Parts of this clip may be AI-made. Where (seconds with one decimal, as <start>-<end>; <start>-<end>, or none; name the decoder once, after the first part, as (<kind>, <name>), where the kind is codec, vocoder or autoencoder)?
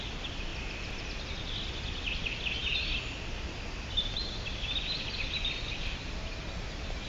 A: none